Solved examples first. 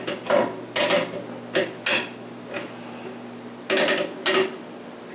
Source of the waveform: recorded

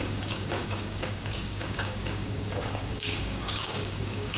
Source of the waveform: remade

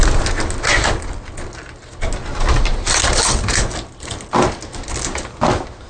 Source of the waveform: recorded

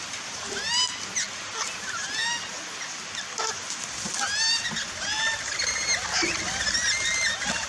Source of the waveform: recorded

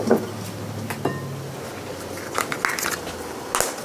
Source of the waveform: recorded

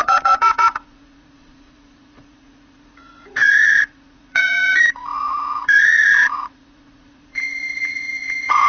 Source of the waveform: remade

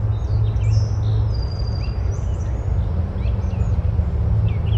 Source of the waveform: recorded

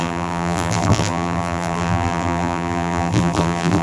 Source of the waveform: remade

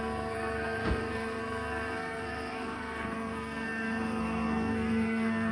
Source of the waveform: remade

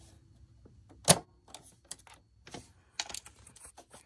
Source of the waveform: recorded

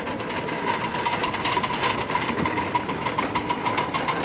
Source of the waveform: recorded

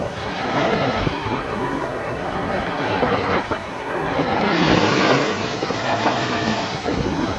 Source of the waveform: remade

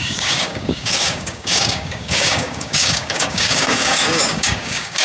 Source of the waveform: remade